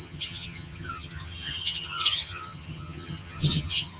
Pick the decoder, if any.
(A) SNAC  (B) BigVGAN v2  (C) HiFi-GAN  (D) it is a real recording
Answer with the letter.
C